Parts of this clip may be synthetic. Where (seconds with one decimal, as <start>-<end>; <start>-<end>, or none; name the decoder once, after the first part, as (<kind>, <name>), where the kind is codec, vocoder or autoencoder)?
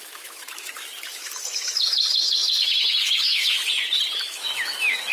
0.0-3.6 (autoencoder, DAC-VAE); 4.2-5.1